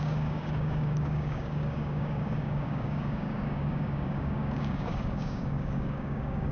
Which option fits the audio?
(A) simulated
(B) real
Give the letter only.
A